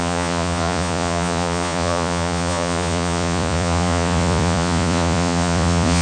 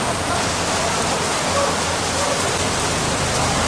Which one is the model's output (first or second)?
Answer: first